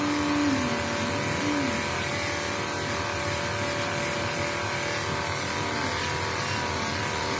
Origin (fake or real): real